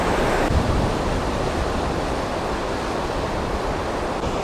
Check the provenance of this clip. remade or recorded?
remade